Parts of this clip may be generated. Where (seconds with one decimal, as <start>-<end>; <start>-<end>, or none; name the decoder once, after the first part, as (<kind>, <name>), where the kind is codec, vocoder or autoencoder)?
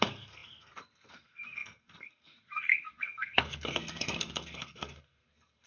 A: 0.0-5.7 (codec, SNAC)